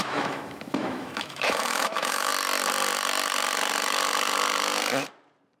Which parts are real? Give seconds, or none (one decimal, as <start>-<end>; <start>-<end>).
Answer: 2.3-5.6